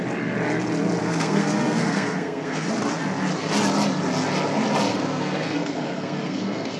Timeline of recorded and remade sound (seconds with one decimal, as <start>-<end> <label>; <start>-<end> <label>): 0.0-1.0 recorded; 1.0-2.7 remade; 2.7-4.9 recorded; 4.9-6.8 remade

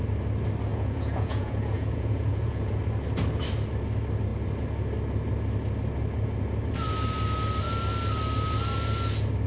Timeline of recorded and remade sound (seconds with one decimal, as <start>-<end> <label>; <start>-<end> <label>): 0.0-0.7 recorded; 0.7-2.8 remade; 2.8-9.5 recorded